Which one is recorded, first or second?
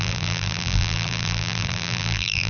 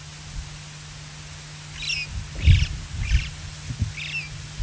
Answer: second